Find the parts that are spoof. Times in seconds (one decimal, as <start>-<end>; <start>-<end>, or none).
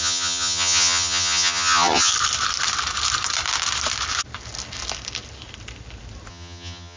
0.0-2.1; 6.3-7.0